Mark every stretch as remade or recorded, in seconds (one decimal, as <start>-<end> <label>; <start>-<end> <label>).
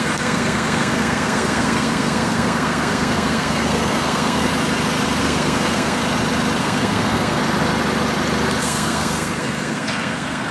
0.0-4.5 remade; 4.5-5.2 recorded; 5.2-6.0 remade; 6.0-6.6 recorded; 6.6-7.4 remade; 7.4-8.6 recorded; 8.6-10.5 remade